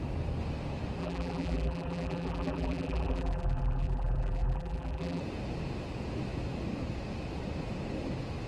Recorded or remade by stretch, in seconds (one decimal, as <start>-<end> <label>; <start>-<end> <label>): 0.0-1.0 recorded; 1.0-5.2 remade; 5.2-8.5 recorded